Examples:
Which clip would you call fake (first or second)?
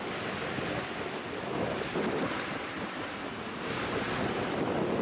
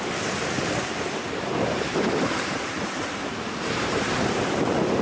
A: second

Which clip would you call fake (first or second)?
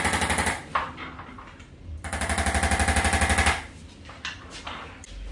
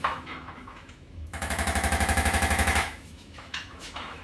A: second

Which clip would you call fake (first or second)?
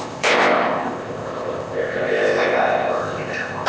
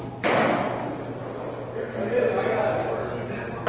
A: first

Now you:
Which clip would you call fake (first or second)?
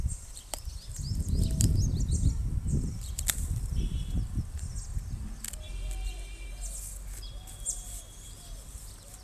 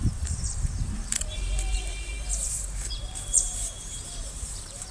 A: second